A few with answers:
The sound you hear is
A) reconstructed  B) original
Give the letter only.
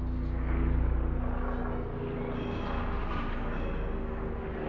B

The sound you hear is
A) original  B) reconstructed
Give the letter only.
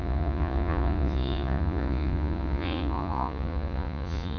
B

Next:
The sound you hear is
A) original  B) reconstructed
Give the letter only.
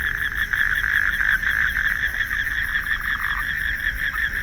A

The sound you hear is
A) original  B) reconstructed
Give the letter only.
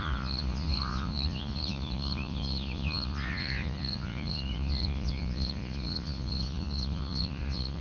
B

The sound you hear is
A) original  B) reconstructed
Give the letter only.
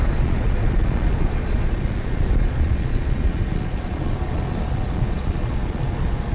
B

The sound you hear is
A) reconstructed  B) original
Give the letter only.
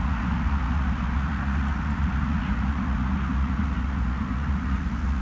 A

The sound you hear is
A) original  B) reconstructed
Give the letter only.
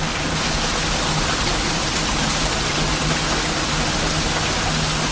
A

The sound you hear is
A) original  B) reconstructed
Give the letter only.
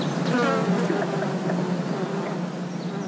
A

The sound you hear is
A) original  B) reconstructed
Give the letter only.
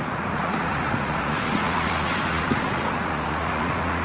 B